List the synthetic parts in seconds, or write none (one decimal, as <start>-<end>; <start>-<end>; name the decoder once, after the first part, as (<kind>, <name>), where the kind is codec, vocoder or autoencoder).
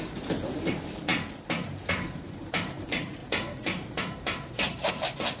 0.0-5.4 (vocoder, BigVGAN v2)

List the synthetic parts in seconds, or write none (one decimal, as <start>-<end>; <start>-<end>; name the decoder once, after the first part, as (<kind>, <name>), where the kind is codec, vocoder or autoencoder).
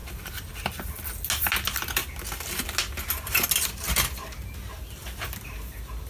0.0-0.5 (vocoder, BigVGAN v2)